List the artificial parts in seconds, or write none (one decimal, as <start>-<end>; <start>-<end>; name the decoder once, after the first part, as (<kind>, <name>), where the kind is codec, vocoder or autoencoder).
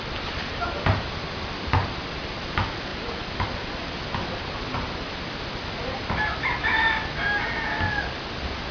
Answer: 0.4-1.1 (vocoder, BigVGAN v2)